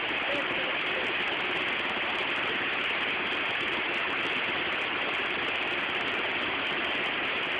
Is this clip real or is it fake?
real